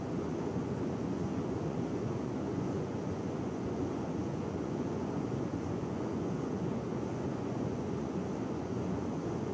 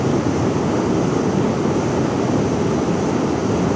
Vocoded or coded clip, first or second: first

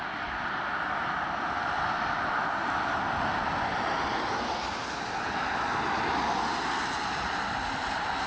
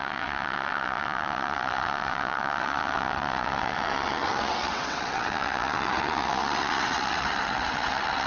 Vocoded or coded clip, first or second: second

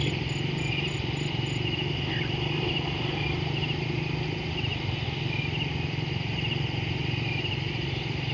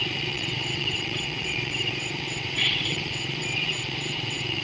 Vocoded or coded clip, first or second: second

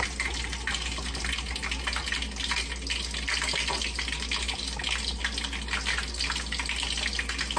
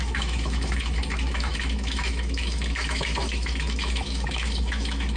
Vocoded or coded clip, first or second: second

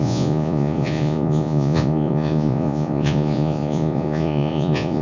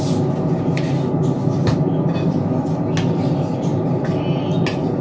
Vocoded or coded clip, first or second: first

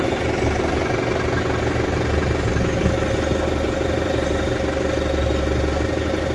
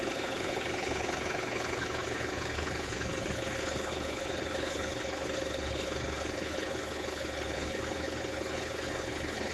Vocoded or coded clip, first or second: second